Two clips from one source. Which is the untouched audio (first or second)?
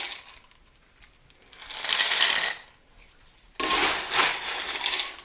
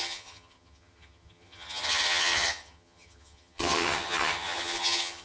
first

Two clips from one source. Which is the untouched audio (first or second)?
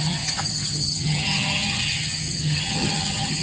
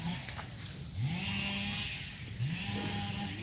second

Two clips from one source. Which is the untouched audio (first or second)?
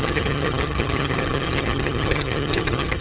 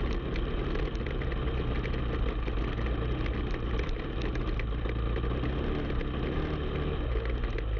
second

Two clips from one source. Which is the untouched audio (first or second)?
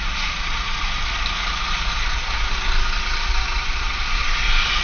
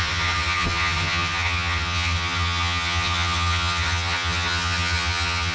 first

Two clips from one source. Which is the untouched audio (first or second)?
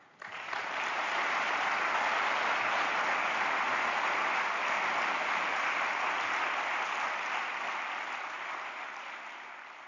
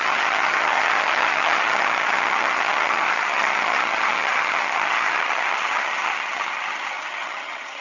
first